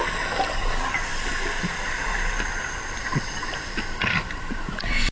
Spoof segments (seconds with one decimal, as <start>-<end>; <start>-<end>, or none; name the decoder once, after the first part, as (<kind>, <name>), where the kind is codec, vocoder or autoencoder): none